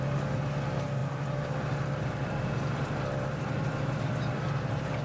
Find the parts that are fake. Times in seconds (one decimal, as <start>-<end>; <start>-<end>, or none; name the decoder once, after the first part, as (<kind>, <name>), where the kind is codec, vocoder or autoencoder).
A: 1.0-4.0 (vocoder, BigVGAN v2)